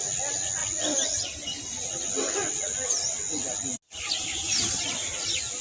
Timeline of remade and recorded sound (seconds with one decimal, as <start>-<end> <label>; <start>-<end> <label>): 0.0-5.6 recorded